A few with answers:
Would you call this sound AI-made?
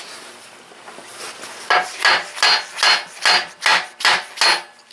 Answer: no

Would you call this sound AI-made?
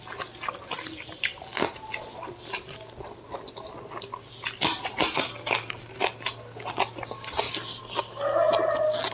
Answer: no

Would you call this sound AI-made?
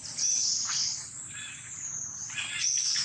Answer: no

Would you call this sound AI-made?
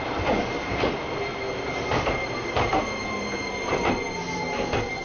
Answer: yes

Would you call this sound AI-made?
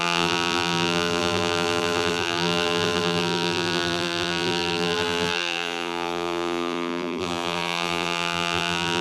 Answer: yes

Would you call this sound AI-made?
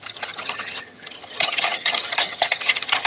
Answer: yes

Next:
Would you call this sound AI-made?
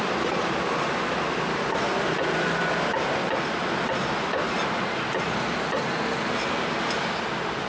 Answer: no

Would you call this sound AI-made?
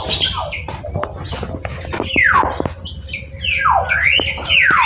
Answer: no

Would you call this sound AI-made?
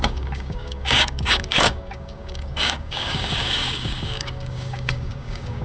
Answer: yes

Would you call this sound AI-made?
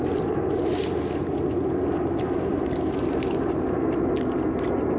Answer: no